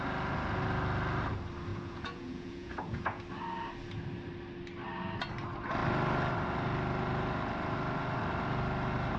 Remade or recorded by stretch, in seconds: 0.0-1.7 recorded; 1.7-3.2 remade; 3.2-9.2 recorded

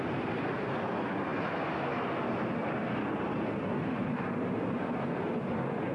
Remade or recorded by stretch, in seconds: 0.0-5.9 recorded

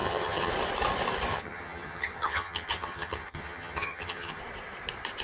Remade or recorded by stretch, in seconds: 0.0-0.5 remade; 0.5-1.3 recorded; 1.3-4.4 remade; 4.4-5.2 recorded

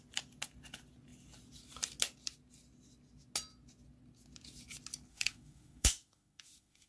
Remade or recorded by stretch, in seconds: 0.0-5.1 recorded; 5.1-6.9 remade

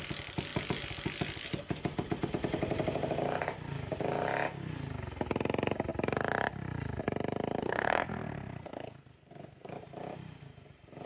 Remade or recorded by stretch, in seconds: 0.0-7.6 recorded; 7.6-9.7 remade; 9.7-11.1 recorded